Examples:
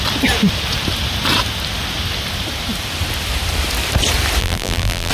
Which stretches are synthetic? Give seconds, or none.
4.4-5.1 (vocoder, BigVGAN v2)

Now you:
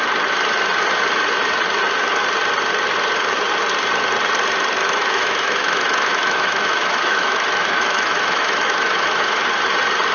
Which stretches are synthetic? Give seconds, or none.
4.8-9.4 (autoencoder, DAC-VAE)